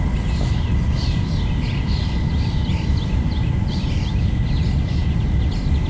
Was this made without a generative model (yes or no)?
yes